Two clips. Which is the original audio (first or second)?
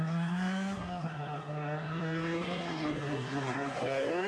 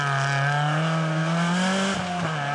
second